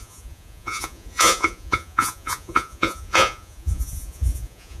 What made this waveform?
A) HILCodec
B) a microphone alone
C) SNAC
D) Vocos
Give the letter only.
D